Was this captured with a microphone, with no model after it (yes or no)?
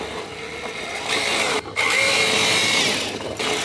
yes